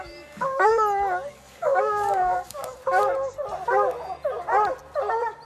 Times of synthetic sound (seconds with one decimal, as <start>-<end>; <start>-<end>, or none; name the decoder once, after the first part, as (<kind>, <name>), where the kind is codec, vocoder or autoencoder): 0.0-0.7 (codec, DAC); 1.3-2.8